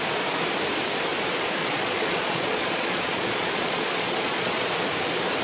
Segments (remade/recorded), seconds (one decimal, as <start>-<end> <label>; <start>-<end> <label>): 0.0-1.6 recorded; 1.6-4.8 remade; 4.8-5.4 recorded